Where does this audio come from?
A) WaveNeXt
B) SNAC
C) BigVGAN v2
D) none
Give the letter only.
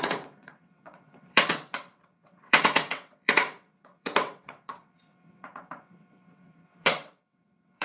A